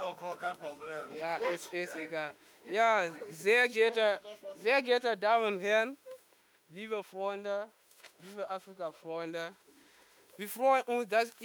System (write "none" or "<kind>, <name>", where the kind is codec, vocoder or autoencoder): autoencoder, DAC-VAE